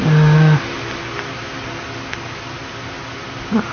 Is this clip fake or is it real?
real